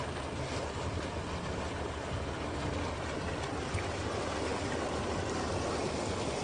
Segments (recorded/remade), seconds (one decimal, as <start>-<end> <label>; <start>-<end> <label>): 0.0-6.4 recorded